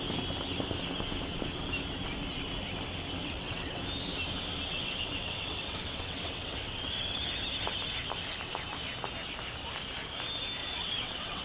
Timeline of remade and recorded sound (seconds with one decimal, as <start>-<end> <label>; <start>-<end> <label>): 0.0-3.2 recorded; 3.2-3.8 remade; 3.8-4.7 recorded; 4.7-7.2 remade; 7.2-10.6 recorded; 10.6-11.4 remade